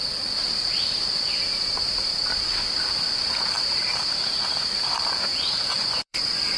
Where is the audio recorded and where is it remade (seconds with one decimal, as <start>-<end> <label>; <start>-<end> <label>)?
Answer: 0.0-5.3 recorded; 5.3-6.6 remade